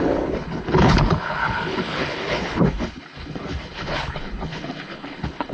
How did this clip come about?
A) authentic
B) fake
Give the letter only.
B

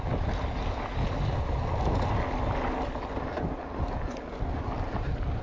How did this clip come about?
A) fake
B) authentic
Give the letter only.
B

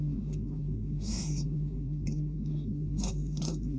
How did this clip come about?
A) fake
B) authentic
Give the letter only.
A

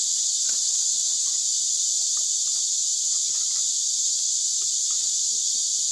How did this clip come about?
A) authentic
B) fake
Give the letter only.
A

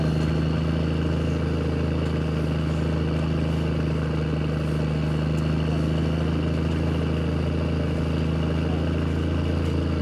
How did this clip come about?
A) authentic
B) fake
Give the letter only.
A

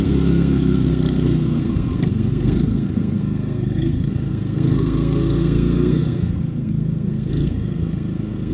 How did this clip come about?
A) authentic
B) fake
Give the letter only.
B